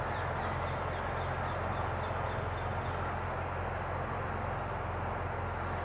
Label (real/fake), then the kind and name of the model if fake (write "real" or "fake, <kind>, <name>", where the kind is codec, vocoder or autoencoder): real